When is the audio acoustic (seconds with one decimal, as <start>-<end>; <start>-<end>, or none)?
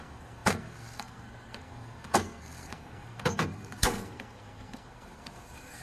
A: none